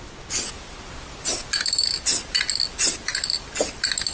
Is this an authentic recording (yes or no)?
yes